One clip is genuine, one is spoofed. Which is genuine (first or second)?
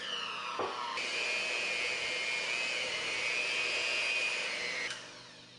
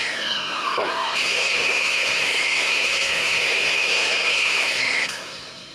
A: first